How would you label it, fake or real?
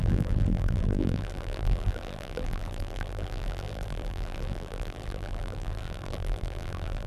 fake